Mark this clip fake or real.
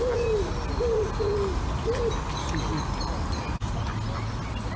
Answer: real